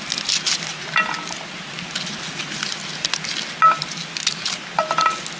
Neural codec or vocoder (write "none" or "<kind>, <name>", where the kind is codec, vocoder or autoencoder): none